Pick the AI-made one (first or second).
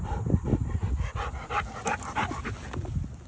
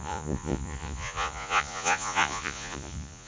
second